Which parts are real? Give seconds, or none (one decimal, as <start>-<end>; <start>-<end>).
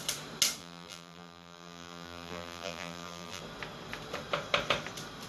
0.0-0.6; 3.4-5.3